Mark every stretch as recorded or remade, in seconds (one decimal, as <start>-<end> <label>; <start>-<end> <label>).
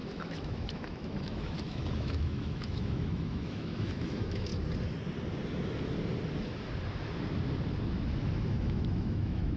0.0-4.5 remade; 4.5-8.5 recorded; 8.5-9.6 remade